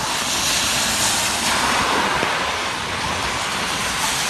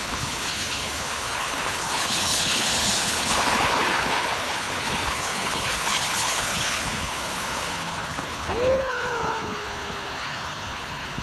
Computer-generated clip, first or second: second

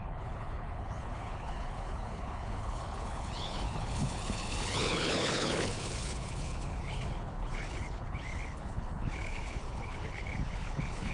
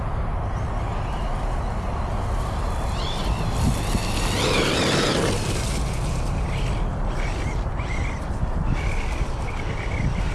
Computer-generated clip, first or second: first